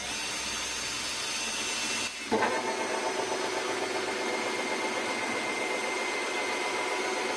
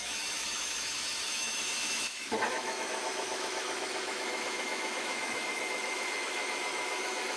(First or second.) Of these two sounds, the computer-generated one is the second